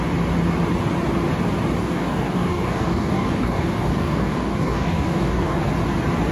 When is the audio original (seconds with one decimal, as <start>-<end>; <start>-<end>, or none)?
0.0-1.8; 5.6-6.3